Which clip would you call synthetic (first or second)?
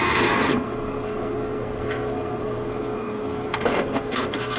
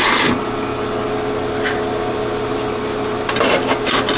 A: first